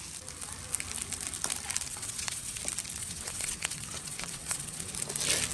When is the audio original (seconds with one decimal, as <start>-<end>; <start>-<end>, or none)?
0.0-1.9; 2.6-3.0; 4.9-5.5